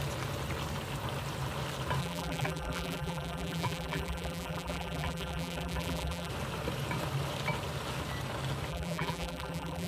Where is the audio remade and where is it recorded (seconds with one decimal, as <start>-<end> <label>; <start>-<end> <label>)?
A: 0.0-2.0 recorded; 2.0-6.3 remade; 6.3-8.7 recorded; 8.7-9.9 remade